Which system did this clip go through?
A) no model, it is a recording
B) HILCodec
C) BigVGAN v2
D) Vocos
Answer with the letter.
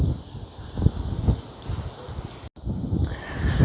A